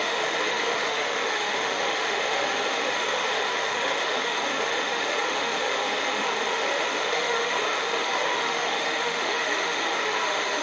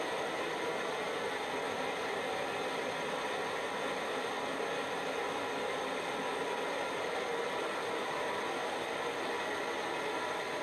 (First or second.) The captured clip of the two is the second